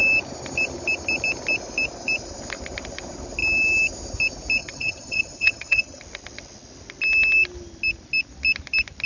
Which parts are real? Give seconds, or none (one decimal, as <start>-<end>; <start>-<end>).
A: 0.0-4.6; 6.0-9.1